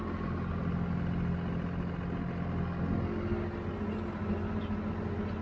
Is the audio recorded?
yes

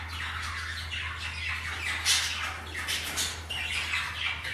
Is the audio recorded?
yes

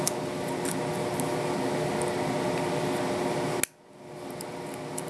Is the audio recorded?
yes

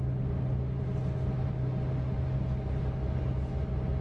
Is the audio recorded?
yes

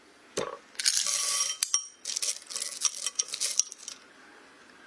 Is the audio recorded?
yes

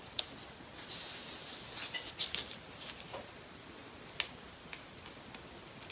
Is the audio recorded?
yes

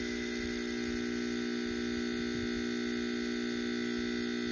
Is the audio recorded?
yes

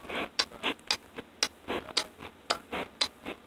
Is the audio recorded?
yes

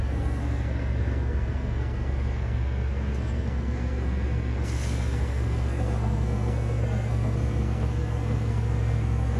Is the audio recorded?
no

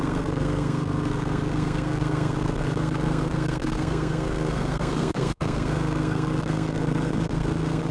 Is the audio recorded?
no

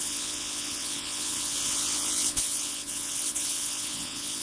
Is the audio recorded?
no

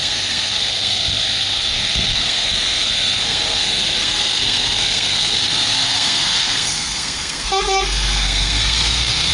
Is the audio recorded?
no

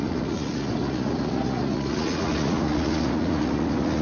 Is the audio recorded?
no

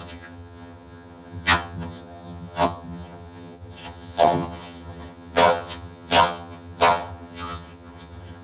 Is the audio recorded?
no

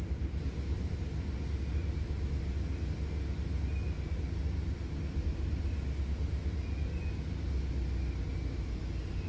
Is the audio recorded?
yes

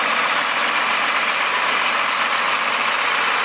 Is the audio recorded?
yes